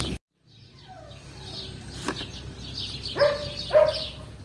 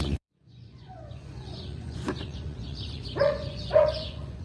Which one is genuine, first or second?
first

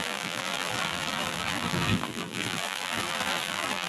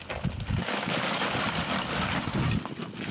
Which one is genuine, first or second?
second